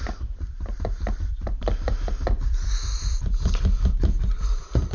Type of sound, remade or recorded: remade